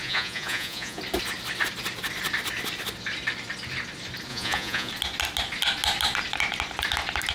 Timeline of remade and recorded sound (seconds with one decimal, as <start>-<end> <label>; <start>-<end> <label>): 0.0-1.0 remade; 1.0-4.3 recorded; 4.3-4.9 remade; 4.9-7.3 recorded